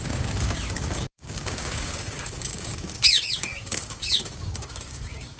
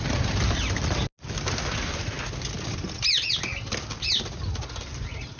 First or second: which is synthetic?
first